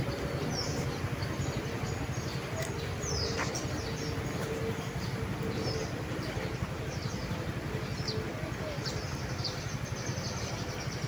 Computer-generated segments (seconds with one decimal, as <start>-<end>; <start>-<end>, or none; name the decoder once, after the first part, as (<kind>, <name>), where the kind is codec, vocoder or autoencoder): none